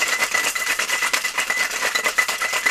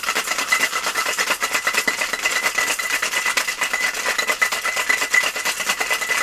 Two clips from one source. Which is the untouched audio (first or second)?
second